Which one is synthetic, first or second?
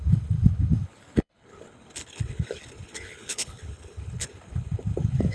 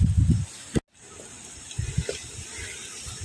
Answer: first